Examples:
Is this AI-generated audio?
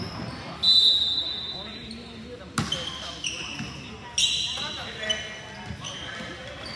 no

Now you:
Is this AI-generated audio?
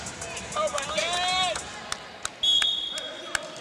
no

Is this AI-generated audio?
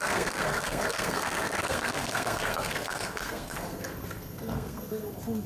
yes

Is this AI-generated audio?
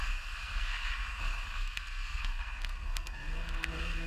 yes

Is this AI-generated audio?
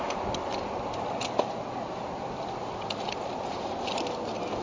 no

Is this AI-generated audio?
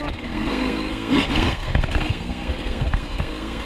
yes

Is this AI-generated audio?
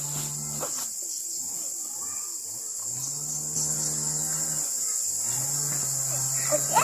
no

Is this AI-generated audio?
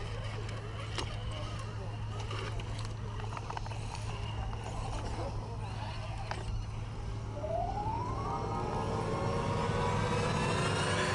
no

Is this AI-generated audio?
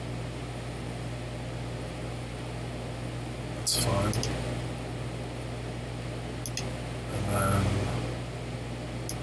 no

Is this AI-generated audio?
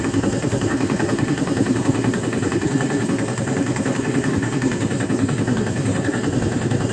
yes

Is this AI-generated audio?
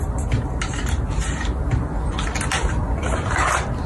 no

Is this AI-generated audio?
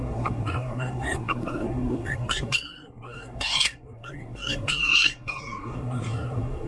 yes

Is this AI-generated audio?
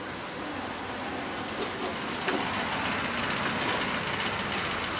no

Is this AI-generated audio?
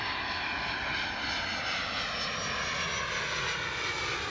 no